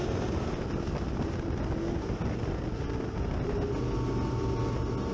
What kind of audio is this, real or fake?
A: real